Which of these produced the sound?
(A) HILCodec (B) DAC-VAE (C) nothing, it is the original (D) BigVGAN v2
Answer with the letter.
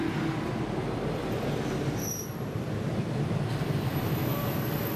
C